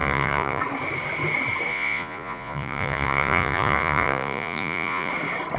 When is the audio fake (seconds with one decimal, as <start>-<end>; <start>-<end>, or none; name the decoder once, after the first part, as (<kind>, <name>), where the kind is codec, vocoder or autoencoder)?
0.0-0.6 (vocoder, Vocos); 1.7-5.1